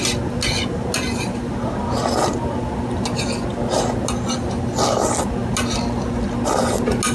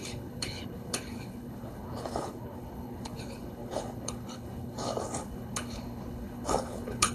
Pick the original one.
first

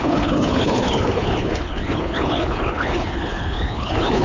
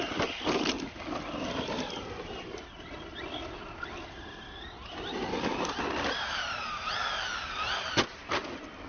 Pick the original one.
second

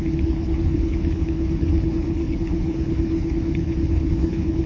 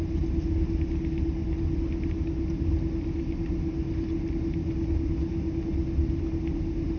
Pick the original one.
second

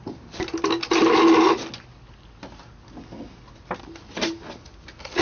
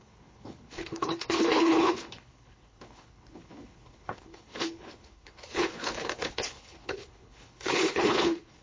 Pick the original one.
first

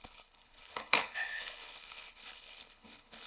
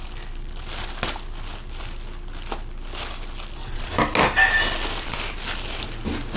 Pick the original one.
second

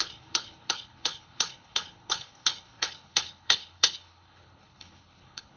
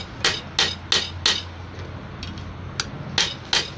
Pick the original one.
second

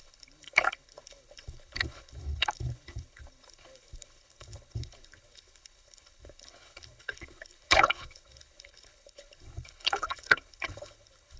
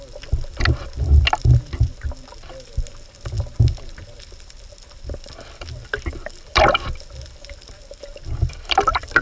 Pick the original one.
second